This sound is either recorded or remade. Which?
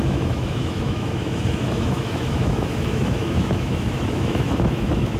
remade